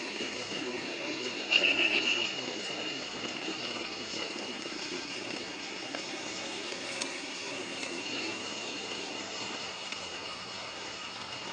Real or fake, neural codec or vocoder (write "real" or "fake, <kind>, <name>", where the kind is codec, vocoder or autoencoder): fake, codec, SNAC